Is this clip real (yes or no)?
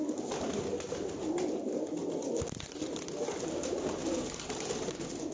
yes